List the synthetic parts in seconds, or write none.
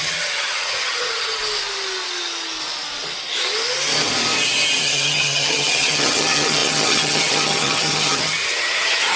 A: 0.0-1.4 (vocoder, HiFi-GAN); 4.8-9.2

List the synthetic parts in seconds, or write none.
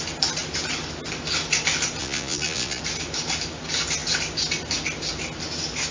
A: 2.0-2.8 (vocoder, Vocos)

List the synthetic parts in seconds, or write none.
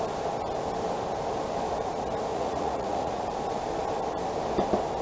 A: 2.3-3.2 (vocoder, Vocos)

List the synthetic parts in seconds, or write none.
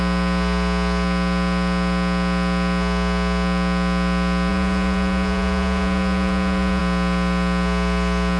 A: 4.5-6.8 (vocoder, Vocos)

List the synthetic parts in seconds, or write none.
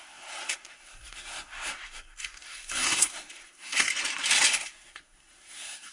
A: 0.0-3.9 (codec, SNAC); 4.5-5.9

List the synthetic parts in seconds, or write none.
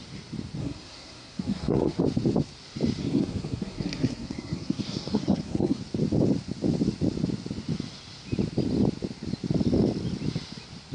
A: 0.6-2.0 (codec, SNAC); 3.0-5.8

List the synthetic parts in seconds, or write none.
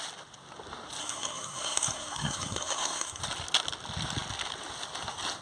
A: 1.0-3.2 (codec, SNAC)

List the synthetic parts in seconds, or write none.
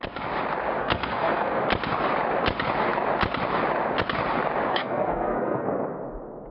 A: 0.8-1.6 (codec, SNAC); 4.7-5.7